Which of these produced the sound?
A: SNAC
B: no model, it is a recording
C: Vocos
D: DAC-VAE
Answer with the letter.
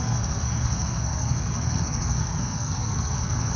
A